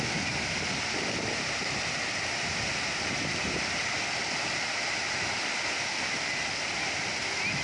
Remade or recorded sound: recorded